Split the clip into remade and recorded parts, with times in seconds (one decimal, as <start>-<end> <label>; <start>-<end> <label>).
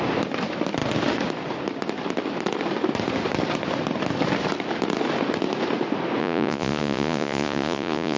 0.0-6.2 recorded; 6.2-8.2 remade